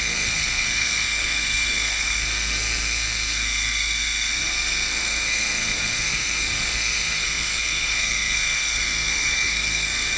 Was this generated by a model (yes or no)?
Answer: yes